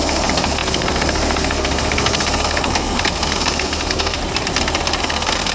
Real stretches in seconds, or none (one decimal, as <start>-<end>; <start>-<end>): 4.2-5.0